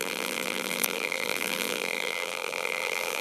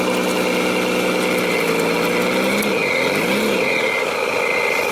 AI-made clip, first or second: first